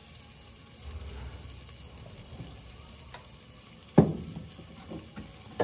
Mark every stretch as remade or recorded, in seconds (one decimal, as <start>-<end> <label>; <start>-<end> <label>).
0.0-5.6 recorded